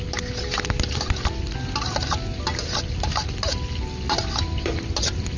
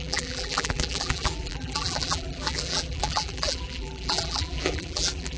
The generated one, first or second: second